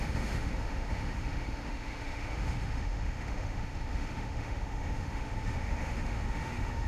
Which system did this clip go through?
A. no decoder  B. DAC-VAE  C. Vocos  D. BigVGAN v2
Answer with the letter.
B